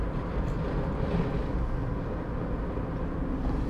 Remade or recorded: recorded